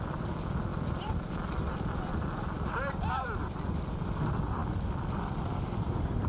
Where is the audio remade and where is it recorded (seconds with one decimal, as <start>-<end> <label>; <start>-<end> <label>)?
0.0-6.3 recorded